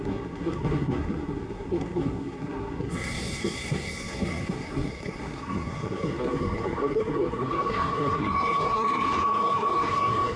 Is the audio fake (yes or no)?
yes